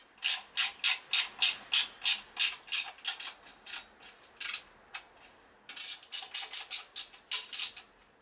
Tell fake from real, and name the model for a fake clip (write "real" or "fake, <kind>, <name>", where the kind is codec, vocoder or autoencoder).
real